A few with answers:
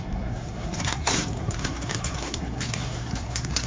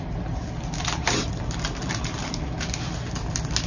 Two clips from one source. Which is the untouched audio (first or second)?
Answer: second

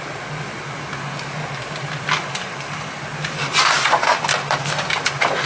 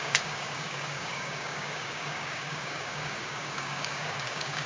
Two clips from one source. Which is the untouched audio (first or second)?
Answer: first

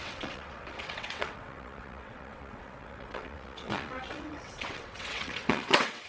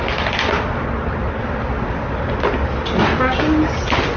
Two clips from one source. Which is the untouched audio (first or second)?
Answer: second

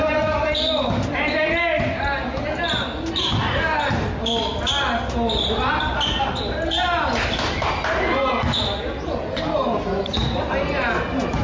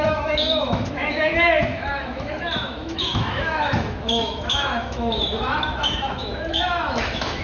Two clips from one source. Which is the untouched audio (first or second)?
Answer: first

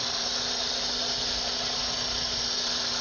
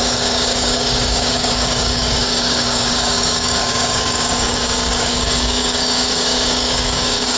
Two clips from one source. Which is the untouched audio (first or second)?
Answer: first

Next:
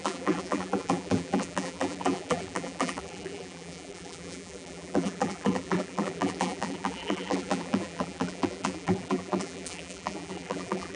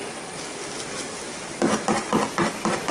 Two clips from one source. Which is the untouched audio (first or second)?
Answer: second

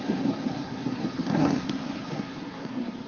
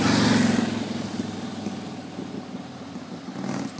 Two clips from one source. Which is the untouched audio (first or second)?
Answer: second